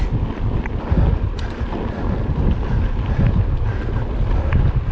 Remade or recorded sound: recorded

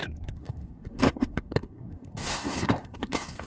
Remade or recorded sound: remade